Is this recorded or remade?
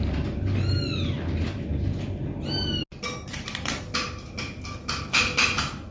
recorded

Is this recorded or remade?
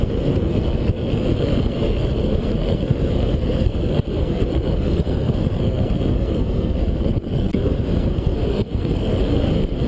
remade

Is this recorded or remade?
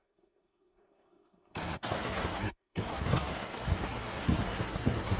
remade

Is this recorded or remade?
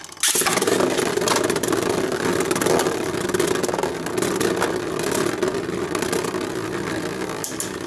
recorded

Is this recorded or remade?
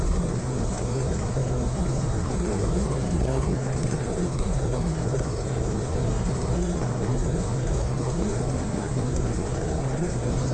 remade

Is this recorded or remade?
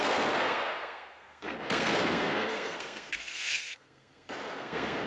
remade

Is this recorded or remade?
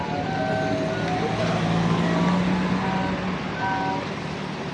recorded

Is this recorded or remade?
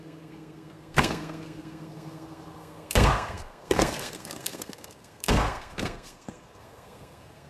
remade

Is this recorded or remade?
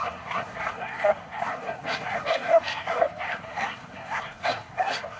remade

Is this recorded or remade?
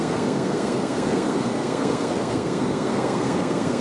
remade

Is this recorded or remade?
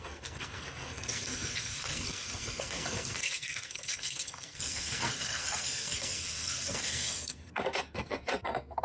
remade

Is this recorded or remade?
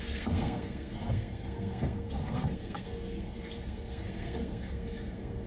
remade